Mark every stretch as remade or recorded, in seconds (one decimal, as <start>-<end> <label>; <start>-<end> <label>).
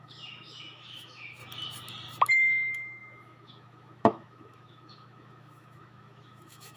0.0-1.4 remade; 1.4-2.3 recorded; 2.3-6.8 remade